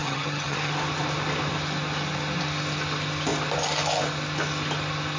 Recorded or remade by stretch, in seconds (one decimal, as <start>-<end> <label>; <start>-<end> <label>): 0.0-0.7 remade; 0.7-5.2 recorded